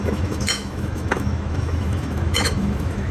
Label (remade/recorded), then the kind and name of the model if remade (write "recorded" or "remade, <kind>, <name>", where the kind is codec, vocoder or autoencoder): remade, autoencoder, DAC-VAE